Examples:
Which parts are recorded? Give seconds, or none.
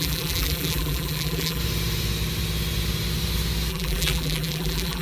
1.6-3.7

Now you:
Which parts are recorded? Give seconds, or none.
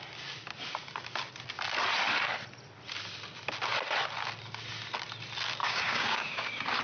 0.0-5.6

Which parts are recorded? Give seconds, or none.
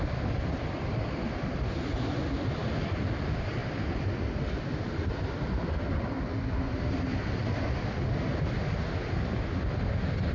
0.0-10.3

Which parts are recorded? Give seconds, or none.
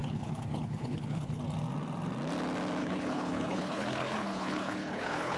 1.4-2.8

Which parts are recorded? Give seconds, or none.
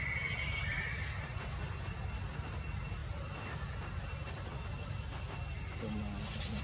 0.0-6.6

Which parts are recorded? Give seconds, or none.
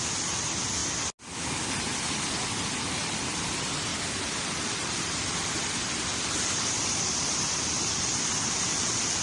0.0-3.9; 5.5-6.1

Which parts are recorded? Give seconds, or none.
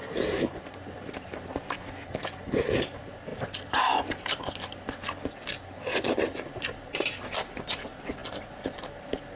3.3-6.6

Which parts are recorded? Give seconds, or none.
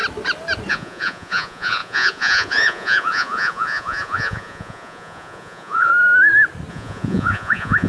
0.0-0.7; 5.9-6.7